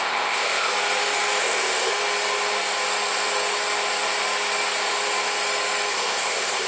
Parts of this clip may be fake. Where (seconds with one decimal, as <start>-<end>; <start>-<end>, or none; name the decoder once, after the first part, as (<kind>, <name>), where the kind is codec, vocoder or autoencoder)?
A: 0.0-0.7 (codec, ZipCodec); 1.4-1.9; 5.9-6.7